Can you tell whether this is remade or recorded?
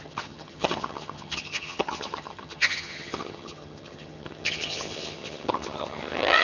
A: remade